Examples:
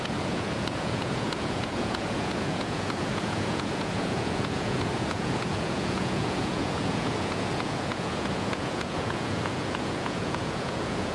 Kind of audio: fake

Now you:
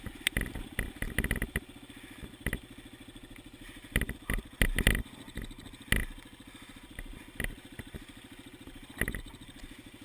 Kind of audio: real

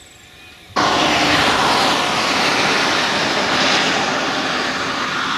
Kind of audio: real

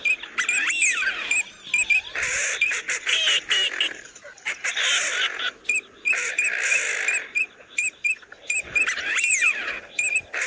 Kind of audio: real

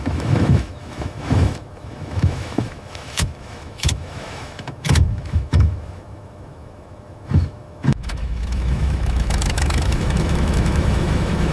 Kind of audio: fake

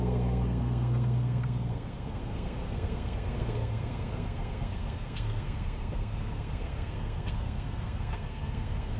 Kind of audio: fake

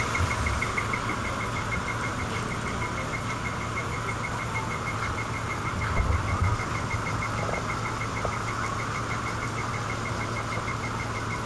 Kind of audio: real